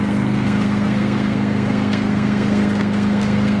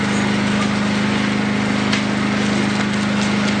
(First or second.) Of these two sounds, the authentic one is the second